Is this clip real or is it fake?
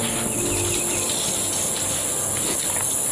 real